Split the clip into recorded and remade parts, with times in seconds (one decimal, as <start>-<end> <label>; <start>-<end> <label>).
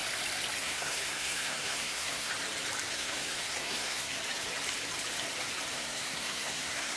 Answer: 0.0-0.6 recorded; 0.6-2.3 remade; 2.3-2.9 recorded; 2.9-4.2 remade; 4.2-5.7 recorded; 5.7-7.0 remade